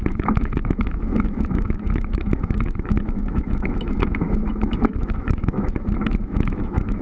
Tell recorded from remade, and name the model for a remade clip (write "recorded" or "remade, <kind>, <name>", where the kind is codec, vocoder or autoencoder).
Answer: remade, autoencoder, DAC-VAE